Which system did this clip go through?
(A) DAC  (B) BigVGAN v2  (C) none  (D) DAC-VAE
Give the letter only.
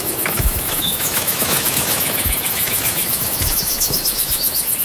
D